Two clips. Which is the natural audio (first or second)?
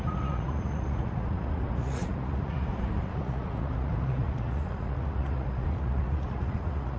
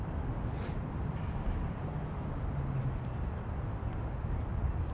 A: second